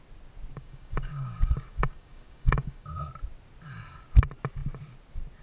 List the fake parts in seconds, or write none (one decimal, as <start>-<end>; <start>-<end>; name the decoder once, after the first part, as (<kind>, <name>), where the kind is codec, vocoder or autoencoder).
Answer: 0.5-3.1 (codec, DAC)